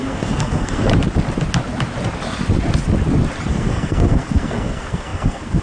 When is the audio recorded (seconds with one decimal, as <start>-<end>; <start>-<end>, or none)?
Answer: 0.9-3.5